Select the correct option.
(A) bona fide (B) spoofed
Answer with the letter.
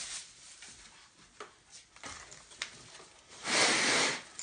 A